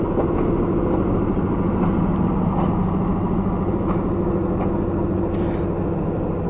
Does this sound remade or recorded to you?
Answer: recorded